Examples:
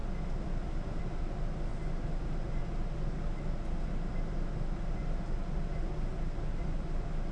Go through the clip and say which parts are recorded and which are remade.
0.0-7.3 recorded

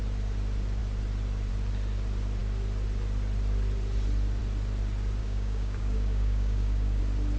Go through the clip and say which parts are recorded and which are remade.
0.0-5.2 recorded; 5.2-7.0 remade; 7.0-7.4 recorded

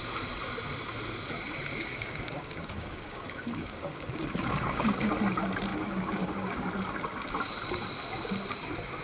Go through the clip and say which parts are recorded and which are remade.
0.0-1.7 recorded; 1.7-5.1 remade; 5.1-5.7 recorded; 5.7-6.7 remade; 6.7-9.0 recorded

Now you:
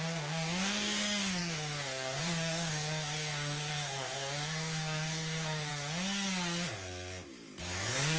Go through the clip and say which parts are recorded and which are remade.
0.0-5.7 remade; 5.7-7.6 recorded; 7.6-8.2 remade